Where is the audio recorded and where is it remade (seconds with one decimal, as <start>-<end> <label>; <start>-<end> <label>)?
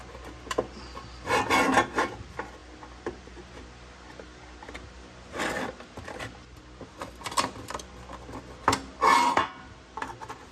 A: 0.0-10.5 recorded